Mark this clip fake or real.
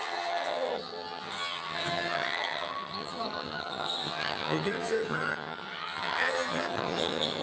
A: fake